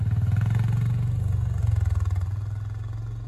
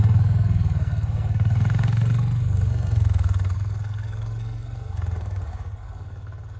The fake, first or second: second